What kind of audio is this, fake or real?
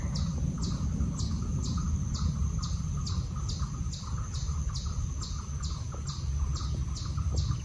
real